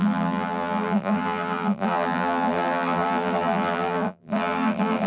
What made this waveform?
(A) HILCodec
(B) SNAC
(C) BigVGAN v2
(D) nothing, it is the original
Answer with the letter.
C